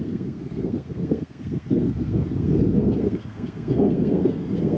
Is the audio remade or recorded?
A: remade